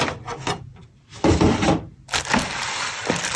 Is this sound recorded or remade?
recorded